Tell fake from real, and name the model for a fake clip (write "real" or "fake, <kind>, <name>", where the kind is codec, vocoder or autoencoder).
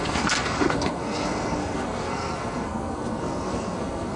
fake, codec, SNAC